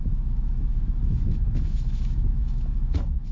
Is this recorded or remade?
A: remade